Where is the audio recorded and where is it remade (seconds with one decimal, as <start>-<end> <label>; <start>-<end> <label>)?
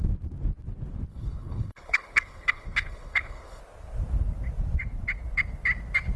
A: 0.0-1.1 recorded; 1.1-3.6 remade; 3.6-6.2 recorded